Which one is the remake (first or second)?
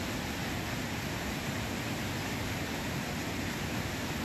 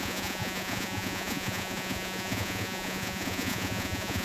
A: second